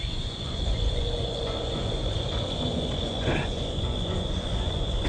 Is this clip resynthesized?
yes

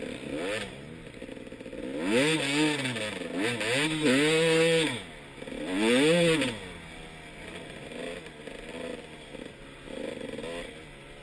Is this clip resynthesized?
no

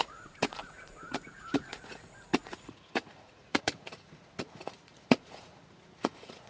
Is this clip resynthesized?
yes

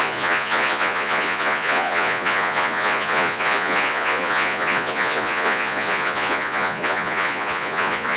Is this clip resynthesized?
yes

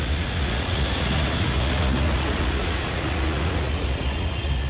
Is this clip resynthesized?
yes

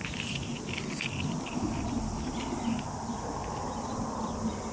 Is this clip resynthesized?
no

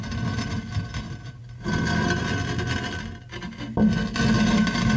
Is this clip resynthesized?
no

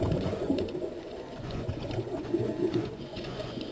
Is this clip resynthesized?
yes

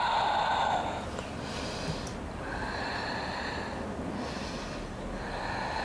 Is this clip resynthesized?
no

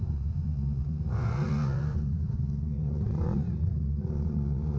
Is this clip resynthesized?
yes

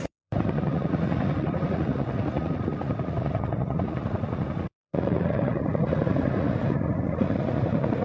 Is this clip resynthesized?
yes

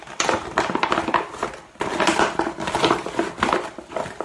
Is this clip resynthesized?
no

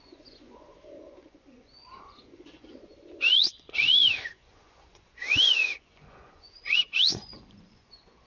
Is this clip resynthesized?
yes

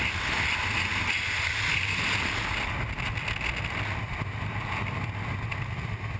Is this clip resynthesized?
no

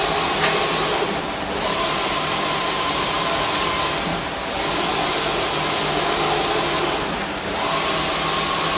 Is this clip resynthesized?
no